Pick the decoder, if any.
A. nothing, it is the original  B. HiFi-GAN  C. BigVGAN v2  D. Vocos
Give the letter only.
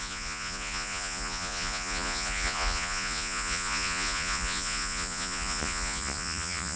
D